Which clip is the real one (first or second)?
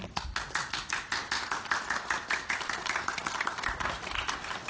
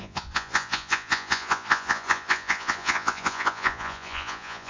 first